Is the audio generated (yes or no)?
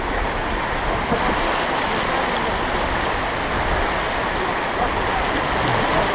no